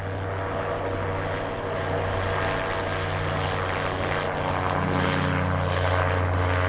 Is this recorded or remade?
recorded